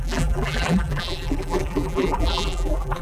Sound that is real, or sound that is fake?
fake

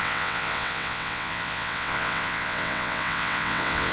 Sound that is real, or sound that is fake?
fake